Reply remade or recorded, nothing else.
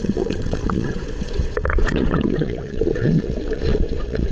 remade